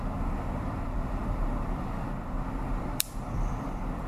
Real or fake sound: fake